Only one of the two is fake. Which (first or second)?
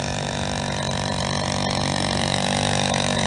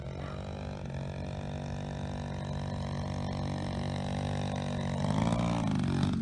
first